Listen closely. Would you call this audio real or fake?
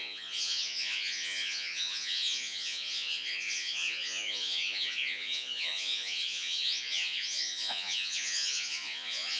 fake